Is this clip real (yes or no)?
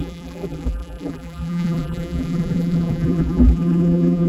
no